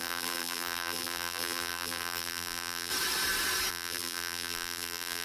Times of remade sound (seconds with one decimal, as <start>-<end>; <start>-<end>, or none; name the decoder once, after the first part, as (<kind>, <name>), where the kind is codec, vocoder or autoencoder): 0.0-2.9 (vocoder, BigVGAN v2); 3.7-5.2